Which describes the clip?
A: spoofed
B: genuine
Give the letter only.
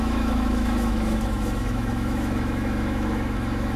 A